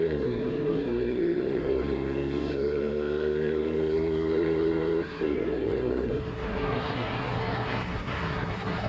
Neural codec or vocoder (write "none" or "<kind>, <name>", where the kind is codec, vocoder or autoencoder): codec, SNAC